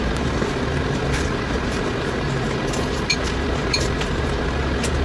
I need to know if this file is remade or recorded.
remade